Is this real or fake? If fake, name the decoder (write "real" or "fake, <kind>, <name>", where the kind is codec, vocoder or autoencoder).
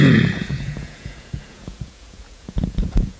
fake, vocoder, Vocos